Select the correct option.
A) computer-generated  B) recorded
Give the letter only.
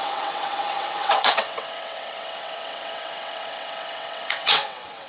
A